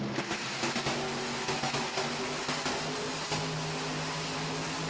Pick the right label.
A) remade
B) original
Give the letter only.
B